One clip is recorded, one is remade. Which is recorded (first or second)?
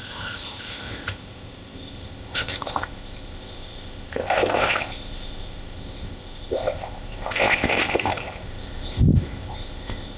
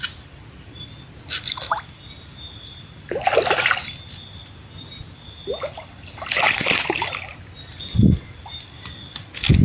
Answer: second